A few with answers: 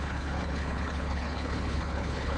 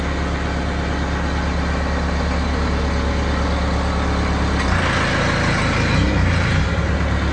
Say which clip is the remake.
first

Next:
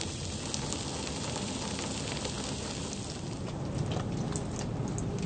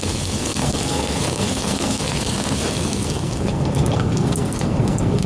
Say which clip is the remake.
second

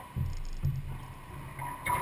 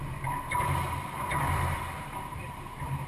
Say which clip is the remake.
second